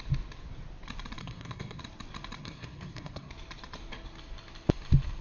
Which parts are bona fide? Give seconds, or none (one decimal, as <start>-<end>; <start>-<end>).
0.0-1.2; 1.8-2.4; 3.3-5.2